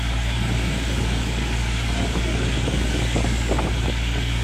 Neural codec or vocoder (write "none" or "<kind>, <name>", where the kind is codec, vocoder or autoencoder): codec, DAC